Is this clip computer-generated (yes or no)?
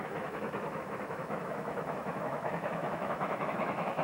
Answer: yes